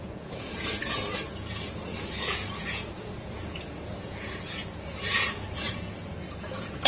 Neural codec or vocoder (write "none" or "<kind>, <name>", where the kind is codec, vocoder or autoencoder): vocoder, Vocos